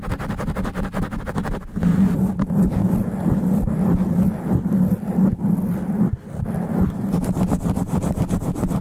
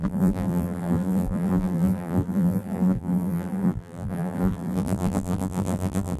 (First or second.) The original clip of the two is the first